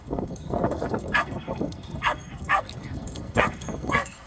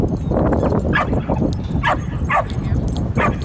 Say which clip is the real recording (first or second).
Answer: second